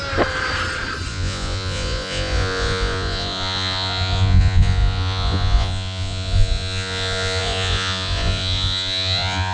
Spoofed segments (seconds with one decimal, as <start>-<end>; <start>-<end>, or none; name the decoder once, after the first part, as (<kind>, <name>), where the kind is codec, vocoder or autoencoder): 1.1-9.5 (vocoder, Vocos)